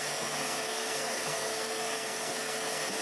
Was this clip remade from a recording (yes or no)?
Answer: yes